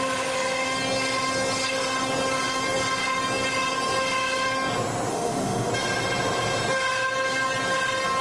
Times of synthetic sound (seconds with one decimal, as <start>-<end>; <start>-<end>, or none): 5.1-5.7